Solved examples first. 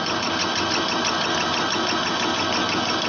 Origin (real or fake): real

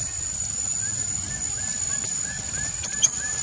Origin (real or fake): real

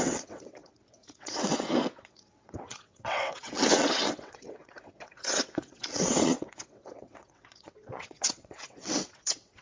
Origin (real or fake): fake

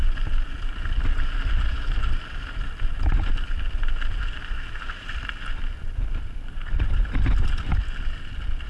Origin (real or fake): real